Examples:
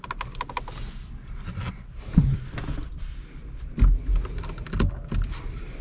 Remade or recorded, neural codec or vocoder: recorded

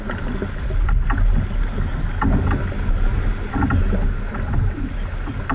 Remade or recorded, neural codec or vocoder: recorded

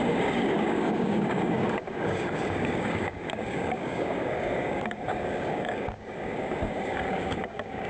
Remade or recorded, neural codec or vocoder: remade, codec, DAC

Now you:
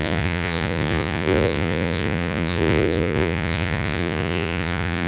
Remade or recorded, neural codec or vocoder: remade, vocoder, Vocos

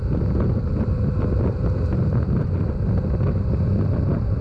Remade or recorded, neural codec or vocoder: recorded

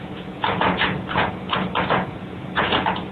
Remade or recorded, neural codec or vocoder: remade, vocoder, Vocos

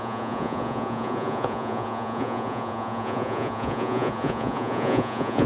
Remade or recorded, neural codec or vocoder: remade, vocoder, Vocos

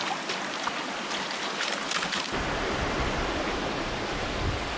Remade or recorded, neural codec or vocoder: recorded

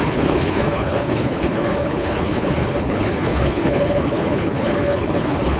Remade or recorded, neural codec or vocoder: remade, codec, HILCodec